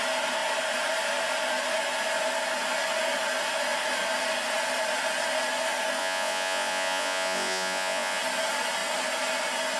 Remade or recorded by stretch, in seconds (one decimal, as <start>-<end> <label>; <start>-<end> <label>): 0.0-6.0 recorded; 6.0-8.2 remade; 8.2-9.8 recorded